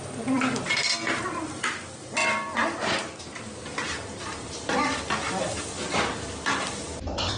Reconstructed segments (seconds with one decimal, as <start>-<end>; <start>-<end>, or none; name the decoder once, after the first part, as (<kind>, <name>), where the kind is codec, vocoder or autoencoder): 0.0-7.4 (vocoder, BigVGAN v2)